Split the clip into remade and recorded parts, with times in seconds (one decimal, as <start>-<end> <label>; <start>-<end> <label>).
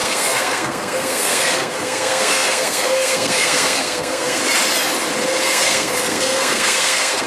0.0-4.4 remade; 4.4-5.4 recorded; 5.4-7.3 remade